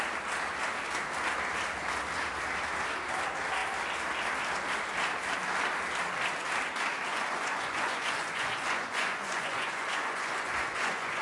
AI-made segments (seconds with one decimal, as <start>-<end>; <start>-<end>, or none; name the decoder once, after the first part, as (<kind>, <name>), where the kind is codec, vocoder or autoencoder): 7.1-11.2 (vocoder, Vocos)